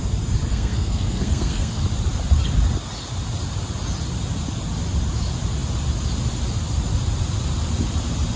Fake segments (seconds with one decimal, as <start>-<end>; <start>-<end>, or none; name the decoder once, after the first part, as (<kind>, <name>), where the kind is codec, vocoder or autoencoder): 0.5-1.8 (codec, SNAC)